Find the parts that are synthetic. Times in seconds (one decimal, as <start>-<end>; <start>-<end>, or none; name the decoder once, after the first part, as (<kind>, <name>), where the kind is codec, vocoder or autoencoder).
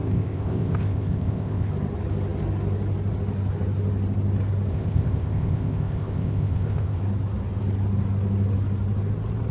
0.0-1.7 (codec, ZipCodec); 4.7-7.0